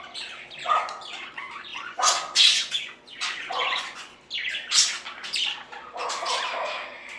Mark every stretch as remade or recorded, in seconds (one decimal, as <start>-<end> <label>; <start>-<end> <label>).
0.0-1.7 recorded; 1.7-4.2 remade; 4.2-7.2 recorded